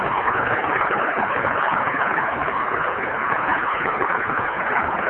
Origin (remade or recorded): remade